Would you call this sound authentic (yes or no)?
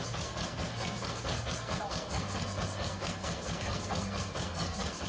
no